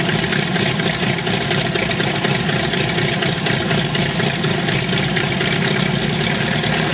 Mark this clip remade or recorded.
remade